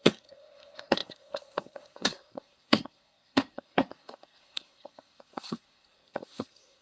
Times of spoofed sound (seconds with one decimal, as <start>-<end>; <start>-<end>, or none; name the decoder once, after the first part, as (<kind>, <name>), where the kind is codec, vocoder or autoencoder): 0.0-6.8 (codec, SNAC)